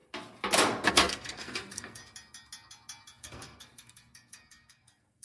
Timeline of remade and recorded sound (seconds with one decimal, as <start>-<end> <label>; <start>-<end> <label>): 0.0-0.9 recorded; 0.9-2.0 remade; 2.0-3.2 recorded; 3.2-5.2 remade